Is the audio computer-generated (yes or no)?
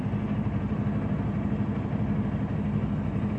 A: no